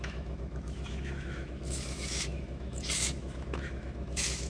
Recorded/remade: remade